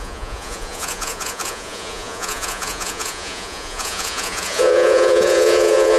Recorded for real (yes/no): no